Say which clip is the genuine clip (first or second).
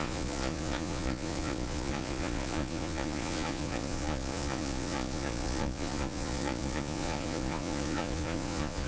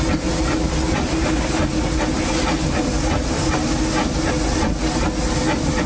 second